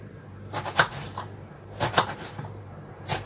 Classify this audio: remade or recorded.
remade